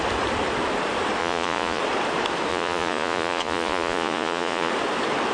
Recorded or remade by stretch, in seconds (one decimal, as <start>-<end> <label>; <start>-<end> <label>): 0.0-1.2 recorded; 1.2-1.8 remade; 1.8-2.5 recorded; 2.5-4.7 remade; 4.7-5.3 recorded